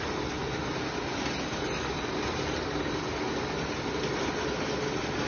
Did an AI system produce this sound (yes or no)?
no